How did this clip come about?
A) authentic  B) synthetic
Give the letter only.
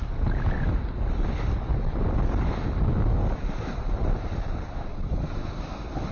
A